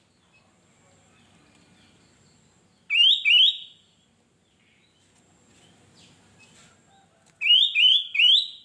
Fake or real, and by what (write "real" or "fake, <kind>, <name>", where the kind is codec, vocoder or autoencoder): real